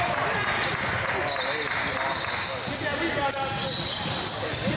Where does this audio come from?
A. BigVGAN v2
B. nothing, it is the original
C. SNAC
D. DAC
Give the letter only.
B